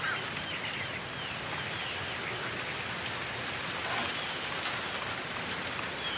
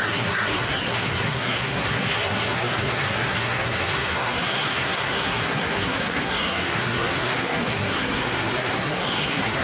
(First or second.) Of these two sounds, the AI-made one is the second